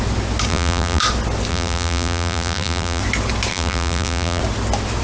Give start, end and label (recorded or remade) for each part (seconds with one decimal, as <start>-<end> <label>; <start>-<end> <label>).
0.0-0.5 recorded; 0.5-1.0 remade; 1.0-1.5 recorded; 1.5-3.0 remade; 3.0-3.5 recorded; 3.5-4.4 remade; 4.4-5.0 recorded